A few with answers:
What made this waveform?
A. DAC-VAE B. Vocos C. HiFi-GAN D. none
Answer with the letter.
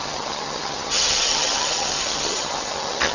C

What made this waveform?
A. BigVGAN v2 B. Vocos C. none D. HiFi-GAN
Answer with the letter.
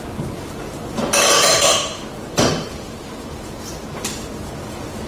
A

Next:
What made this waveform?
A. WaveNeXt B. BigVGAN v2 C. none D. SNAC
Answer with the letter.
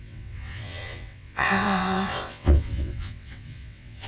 A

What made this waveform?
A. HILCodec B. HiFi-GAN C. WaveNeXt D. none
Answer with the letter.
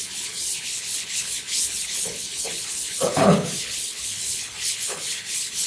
A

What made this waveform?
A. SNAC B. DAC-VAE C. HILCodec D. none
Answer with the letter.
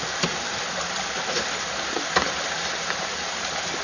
D